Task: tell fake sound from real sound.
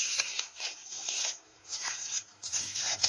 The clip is fake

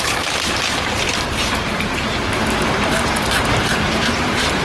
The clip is fake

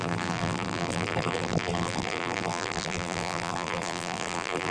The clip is fake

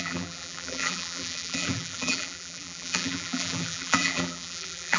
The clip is fake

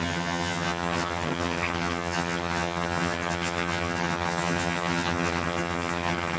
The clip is fake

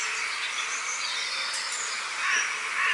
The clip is real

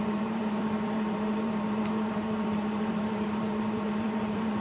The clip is fake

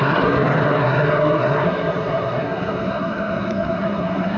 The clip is fake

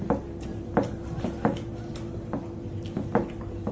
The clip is real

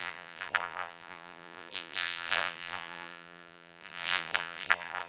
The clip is fake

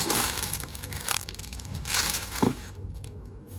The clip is fake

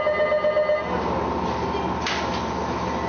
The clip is real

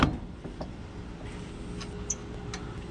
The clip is real